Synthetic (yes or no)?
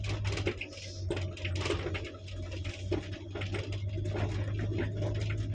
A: no